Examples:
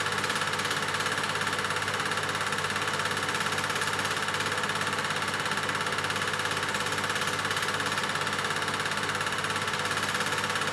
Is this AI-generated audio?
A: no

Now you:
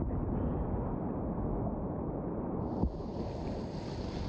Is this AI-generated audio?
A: no